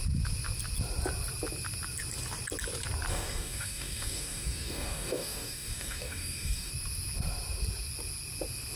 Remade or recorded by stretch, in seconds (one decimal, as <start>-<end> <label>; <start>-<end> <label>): 0.0-3.1 recorded; 3.1-6.7 remade; 6.7-8.8 recorded